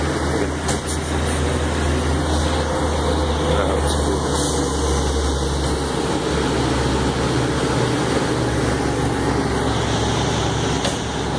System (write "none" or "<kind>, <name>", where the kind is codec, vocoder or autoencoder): none